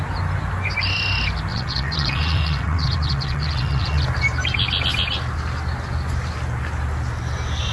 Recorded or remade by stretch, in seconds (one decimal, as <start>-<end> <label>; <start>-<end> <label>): 0.0-1.5 recorded; 1.5-4.0 remade; 4.0-7.7 recorded